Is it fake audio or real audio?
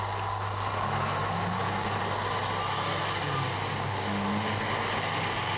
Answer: real